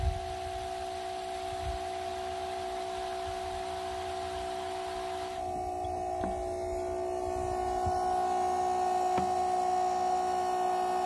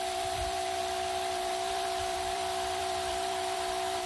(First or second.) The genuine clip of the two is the first